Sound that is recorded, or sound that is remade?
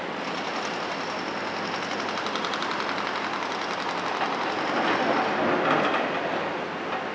recorded